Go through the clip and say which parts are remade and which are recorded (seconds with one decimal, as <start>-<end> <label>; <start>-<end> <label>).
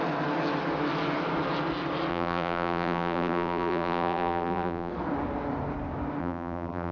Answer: 0.0-2.1 recorded; 2.1-4.9 remade; 4.9-6.2 recorded; 6.2-6.9 remade